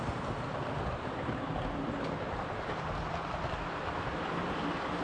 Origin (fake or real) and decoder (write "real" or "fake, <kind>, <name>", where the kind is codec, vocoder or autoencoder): real